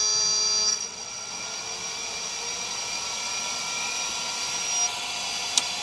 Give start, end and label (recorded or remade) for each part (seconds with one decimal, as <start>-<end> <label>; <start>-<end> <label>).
0.0-0.7 recorded; 0.7-1.3 remade; 1.3-5.8 recorded